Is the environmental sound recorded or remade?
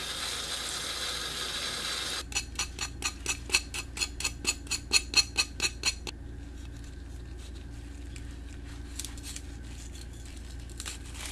recorded